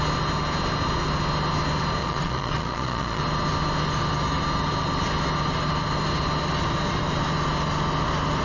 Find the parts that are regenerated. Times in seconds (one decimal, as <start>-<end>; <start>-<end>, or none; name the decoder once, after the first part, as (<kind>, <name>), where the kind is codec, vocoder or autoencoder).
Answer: 2.0-3.2 (vocoder, Vocos)